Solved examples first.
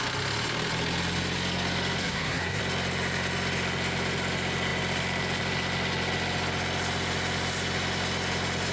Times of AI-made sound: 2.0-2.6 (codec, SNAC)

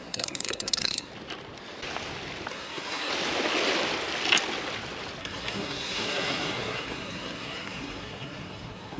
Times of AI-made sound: 0.0-1.1 (codec, SNAC); 2.5-3.1; 5.2-9.0

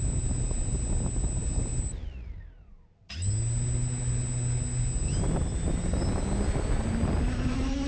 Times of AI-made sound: none